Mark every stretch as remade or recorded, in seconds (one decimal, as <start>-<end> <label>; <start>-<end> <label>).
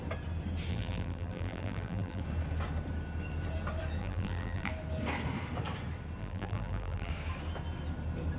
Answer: 0.0-0.7 recorded; 0.7-2.2 remade; 2.2-4.0 recorded; 4.0-4.7 remade; 4.7-6.2 recorded; 6.2-7.1 remade; 7.1-8.4 recorded